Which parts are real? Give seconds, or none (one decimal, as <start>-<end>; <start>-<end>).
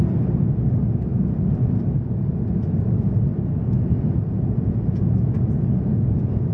0.0-3.6